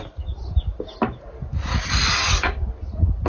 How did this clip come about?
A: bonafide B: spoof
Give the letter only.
A